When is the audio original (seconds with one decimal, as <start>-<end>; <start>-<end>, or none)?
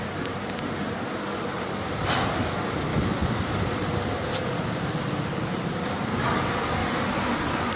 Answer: 2.9-4.4; 6.8-7.3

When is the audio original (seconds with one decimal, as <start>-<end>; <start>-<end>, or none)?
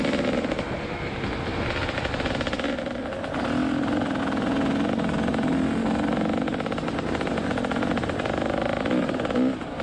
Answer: 0.0-9.8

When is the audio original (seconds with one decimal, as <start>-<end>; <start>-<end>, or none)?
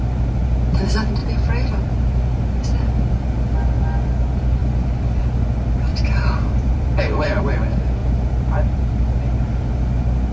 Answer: 0.0-1.2; 1.9-4.6; 5.2-5.9; 7.4-8.0; 8.8-10.3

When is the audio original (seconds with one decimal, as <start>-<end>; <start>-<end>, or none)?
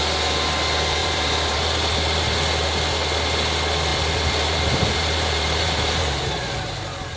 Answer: 0.0-1.0; 2.3-3.9; 6.7-7.2